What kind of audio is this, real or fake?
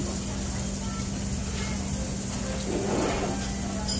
real